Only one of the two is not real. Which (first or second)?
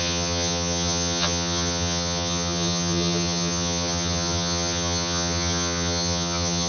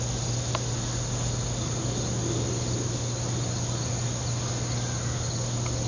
first